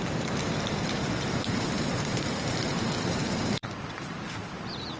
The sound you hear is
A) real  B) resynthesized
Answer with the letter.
B